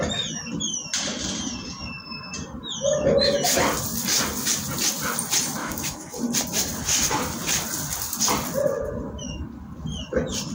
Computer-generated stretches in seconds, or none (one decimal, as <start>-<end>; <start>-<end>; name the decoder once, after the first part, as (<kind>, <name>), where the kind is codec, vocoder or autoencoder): 5.6-6.2 (autoencoder, DAC-VAE)